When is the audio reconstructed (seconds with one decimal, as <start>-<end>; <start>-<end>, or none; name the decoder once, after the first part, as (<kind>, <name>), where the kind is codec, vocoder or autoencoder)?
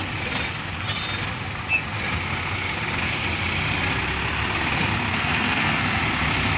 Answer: 5.1-6.0 (codec, SNAC)